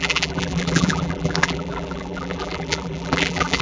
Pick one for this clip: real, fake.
fake